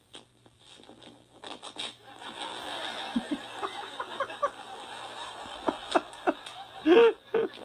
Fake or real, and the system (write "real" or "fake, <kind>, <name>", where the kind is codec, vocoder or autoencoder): fake, vocoder, BigVGAN v2